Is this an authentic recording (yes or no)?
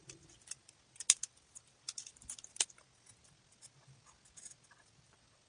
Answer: yes